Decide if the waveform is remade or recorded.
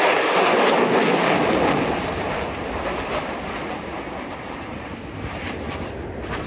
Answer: recorded